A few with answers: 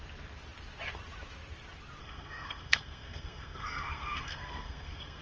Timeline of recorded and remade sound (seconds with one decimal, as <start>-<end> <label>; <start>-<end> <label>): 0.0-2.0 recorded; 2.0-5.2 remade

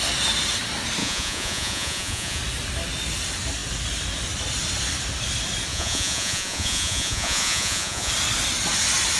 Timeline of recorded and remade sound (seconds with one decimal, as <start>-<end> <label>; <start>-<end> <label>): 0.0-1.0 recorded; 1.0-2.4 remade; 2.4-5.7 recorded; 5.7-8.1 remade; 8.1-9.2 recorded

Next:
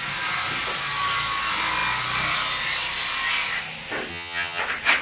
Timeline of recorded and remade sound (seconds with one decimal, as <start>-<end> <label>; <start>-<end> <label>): 0.0-4.1 recorded; 4.1-4.6 remade; 4.6-5.0 recorded